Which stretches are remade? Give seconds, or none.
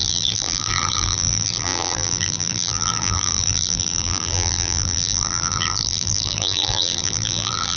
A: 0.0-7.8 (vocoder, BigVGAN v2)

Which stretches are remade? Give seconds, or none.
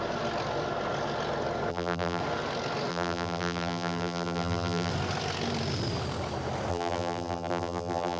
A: 1.7-2.2 (vocoder, BigVGAN v2); 2.9-4.9; 6.7-8.2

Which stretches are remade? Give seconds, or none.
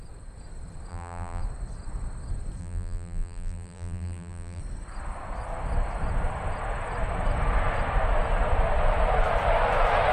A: 0.9-1.4 (vocoder, BigVGAN v2); 2.6-4.6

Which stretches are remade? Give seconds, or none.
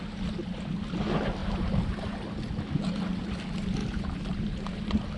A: 1.4-2.5 (vocoder, BigVGAN v2); 3.8-4.7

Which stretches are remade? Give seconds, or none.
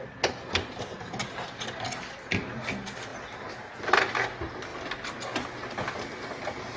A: none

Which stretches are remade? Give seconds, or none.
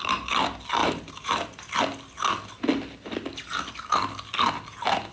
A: 0.8-1.6 (vocoder, BigVGAN v2)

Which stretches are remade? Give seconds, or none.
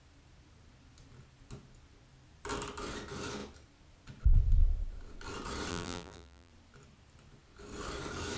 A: 5.7-6.5 (vocoder, BigVGAN v2)